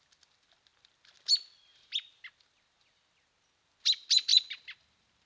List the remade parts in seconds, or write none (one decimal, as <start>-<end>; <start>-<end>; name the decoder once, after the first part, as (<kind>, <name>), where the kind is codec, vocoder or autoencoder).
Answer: none